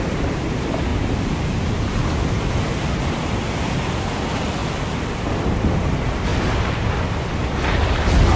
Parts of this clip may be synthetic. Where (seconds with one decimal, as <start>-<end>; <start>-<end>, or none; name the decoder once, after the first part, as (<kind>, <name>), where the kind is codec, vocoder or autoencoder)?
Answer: 6.3-6.9 (vocoder, BigVGAN v2)